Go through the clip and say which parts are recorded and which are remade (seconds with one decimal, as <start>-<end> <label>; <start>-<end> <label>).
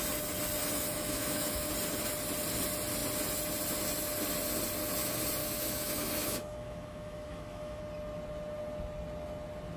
0.0-0.6 recorded; 0.6-1.7 remade; 1.7-5.4 recorded; 5.4-7.8 remade; 7.8-9.8 recorded